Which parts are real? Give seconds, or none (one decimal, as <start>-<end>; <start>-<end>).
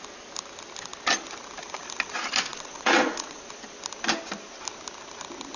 0.0-2.5; 3.4-5.6